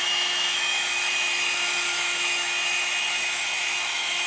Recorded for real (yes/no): no